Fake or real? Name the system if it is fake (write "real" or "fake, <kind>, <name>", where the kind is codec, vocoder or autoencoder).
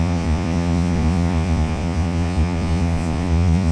fake, vocoder, Vocos